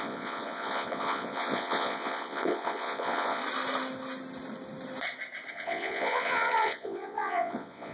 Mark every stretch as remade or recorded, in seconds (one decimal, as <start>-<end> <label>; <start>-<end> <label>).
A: 0.0-3.4 remade; 3.4-5.5 recorded; 5.5-7.9 remade